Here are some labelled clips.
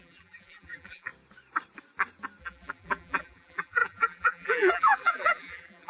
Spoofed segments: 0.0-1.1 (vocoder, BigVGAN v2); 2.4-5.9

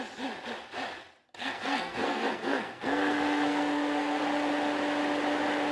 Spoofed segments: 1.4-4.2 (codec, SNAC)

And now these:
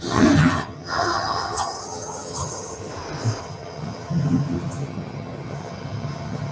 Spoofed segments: 0.0-2.9 (vocoder, HiFi-GAN); 3.4-6.5